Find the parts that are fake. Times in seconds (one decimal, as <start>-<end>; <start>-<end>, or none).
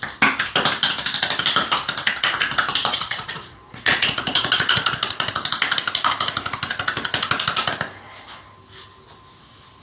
2.8-5.3